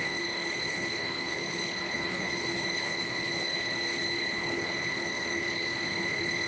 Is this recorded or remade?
remade